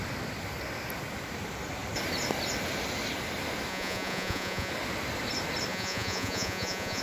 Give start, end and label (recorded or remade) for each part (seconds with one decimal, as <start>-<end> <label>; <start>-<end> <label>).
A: 0.0-3.7 recorded; 3.7-4.7 remade; 4.7-5.7 recorded; 5.7-7.0 remade